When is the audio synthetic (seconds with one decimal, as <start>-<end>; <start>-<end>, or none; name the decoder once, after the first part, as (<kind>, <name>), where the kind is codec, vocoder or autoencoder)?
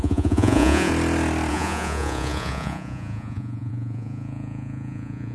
0.0-0.9 (vocoder, Vocos); 1.5-5.3